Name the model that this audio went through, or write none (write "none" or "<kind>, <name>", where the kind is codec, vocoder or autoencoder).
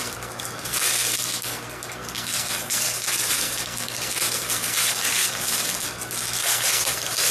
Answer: codec, SNAC